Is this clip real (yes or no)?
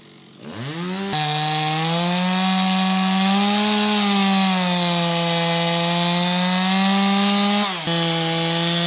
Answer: yes